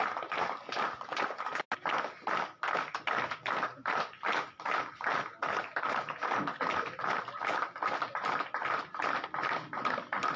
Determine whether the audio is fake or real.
real